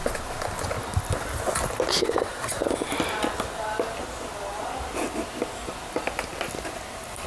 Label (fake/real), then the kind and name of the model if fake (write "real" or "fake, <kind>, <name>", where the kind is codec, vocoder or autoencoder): real